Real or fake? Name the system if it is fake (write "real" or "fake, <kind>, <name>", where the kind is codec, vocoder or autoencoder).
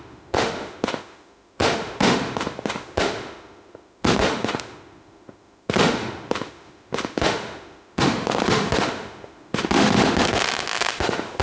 fake, autoencoder, DAC-VAE